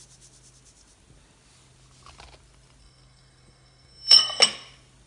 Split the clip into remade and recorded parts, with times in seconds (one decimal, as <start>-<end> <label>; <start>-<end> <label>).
0.0-2.8 recorded; 2.8-4.4 remade; 4.4-5.1 recorded